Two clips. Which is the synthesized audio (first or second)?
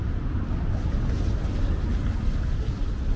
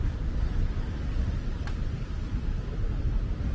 second